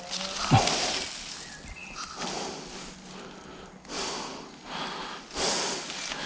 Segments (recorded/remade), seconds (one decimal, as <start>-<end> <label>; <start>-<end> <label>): 0.0-6.3 recorded